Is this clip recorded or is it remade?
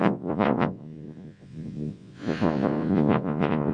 remade